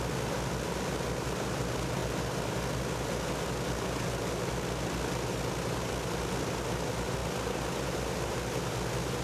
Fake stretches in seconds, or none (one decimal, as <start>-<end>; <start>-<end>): none